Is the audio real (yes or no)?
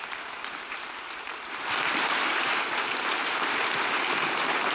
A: no